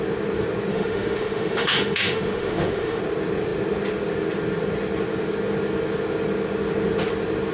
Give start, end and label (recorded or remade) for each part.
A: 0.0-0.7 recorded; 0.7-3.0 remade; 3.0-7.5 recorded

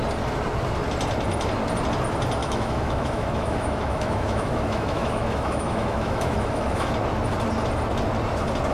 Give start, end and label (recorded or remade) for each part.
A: 0.0-2.4 recorded; 2.4-6.9 remade; 6.9-8.7 recorded

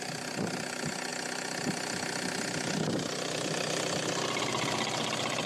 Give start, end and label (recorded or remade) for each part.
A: 0.0-5.5 recorded